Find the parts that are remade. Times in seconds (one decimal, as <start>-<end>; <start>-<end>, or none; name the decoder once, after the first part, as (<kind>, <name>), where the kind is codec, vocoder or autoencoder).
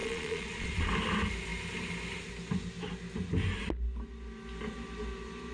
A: 0.0-0.9 (vocoder, Vocos)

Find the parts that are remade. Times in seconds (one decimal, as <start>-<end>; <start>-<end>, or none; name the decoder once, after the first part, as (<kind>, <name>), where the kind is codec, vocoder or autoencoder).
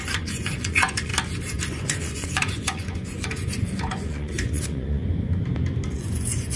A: 0.0-1.1 (vocoder, Vocos); 1.7-5.0; 5.9-6.6